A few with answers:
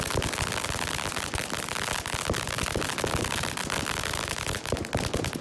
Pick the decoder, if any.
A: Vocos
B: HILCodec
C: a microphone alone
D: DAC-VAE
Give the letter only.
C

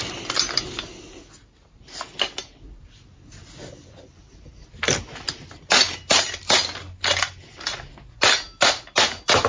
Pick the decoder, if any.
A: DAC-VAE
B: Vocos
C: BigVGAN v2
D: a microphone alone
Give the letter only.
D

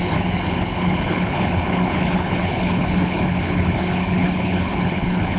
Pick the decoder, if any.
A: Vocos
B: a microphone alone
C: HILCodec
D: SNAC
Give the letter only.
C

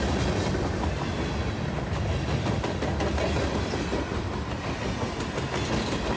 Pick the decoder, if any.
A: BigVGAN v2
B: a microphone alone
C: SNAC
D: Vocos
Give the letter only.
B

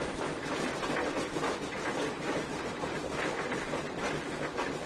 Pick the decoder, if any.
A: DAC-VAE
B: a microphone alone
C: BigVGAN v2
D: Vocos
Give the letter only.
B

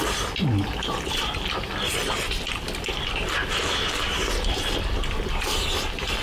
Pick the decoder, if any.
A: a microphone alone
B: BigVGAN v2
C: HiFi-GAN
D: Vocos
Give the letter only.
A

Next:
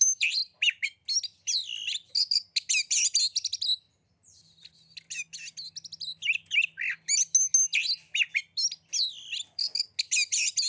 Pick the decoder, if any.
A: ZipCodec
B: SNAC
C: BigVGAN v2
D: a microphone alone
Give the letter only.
D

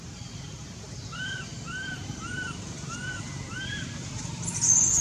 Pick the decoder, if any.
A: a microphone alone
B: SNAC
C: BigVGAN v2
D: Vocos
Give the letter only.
C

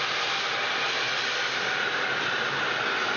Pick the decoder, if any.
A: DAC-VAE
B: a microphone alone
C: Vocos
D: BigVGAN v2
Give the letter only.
D